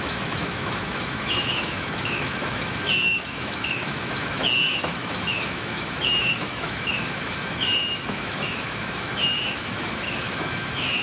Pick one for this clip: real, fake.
fake